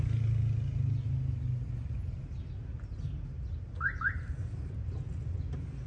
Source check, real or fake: real